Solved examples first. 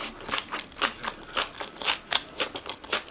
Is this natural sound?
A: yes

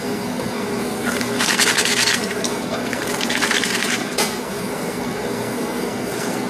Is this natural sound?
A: no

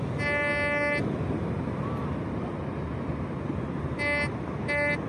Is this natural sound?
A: yes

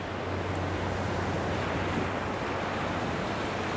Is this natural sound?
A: yes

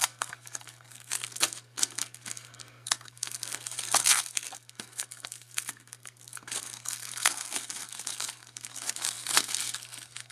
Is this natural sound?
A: no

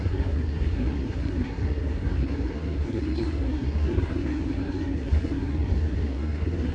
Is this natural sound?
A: no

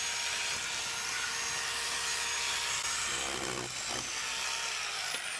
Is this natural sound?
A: yes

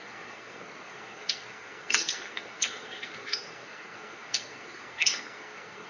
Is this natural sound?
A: no